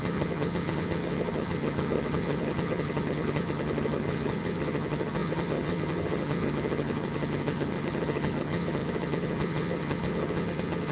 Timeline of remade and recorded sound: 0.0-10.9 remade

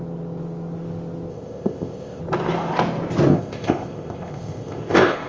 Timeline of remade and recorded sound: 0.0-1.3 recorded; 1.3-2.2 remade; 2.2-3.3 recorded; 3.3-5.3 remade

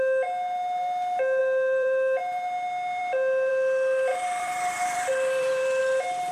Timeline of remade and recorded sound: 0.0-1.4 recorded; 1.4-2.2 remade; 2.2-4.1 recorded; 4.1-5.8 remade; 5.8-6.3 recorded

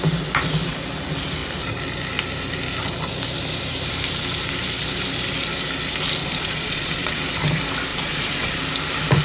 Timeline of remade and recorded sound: 0.0-6.2 recorded; 6.2-7.2 remade; 7.2-7.9 recorded; 7.9-8.6 remade; 8.6-9.2 recorded

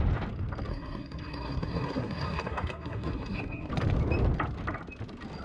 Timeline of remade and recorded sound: 0.0-0.7 recorded; 0.7-3.7 remade; 3.7-5.4 recorded